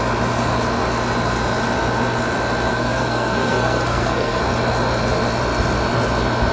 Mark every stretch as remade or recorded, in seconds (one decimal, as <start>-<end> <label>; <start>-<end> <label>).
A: 0.0-2.7 recorded; 2.7-4.4 remade; 4.4-6.5 recorded